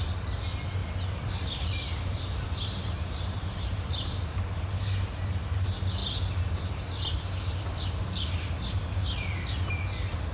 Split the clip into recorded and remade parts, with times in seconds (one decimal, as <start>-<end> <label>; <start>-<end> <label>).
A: 0.0-0.8 recorded; 0.8-4.4 remade; 4.4-10.3 recorded